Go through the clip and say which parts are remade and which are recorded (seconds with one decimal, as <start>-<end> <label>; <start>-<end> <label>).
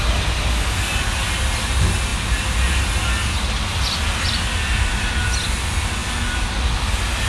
0.0-6.0 recorded; 6.0-7.3 remade